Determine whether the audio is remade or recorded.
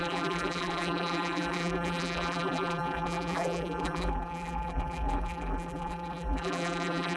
remade